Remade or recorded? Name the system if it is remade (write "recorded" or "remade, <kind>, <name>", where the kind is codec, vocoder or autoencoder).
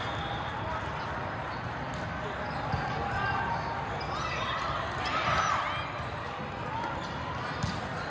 recorded